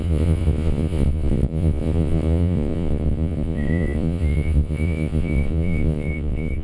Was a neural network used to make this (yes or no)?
yes